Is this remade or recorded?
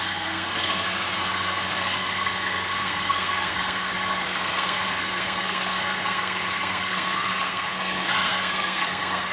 remade